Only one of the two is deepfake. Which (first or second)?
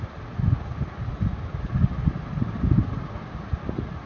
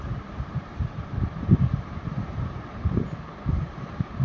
second